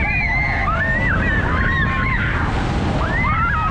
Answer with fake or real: real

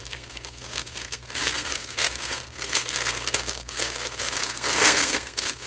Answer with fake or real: fake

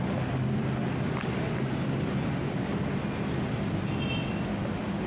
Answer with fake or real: real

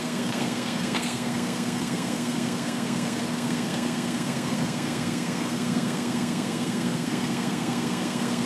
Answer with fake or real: fake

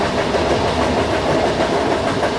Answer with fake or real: real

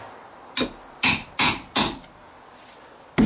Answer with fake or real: real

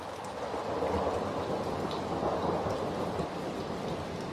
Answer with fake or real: real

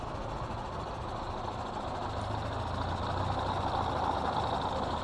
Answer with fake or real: real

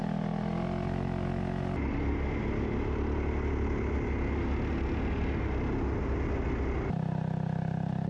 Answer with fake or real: real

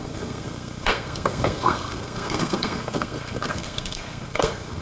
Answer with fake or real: fake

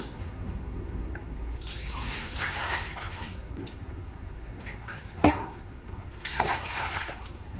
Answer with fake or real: fake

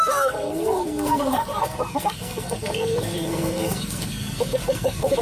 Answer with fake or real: fake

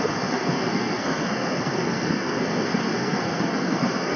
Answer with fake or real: fake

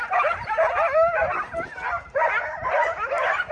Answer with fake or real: real